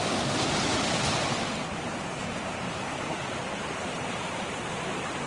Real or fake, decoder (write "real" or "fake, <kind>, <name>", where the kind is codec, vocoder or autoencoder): real